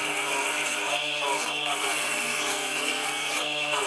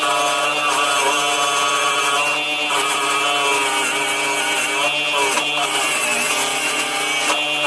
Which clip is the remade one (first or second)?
first